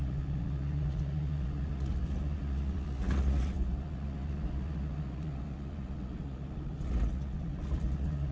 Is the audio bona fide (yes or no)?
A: no